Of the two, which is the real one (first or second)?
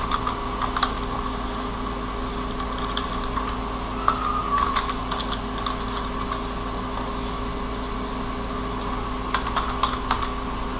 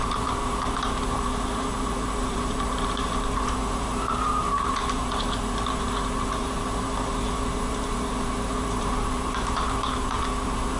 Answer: first